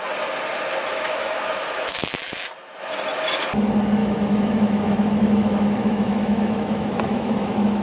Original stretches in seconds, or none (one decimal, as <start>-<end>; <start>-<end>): 0.0-0.9; 2.1-4.0